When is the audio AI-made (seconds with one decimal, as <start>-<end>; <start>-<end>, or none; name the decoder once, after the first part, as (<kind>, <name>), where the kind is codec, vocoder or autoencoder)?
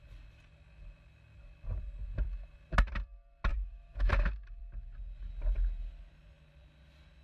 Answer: 3.5-4.1 (autoencoder, DAC-VAE)